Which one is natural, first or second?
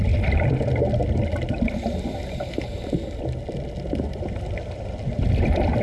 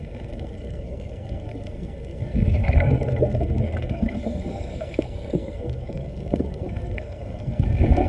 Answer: first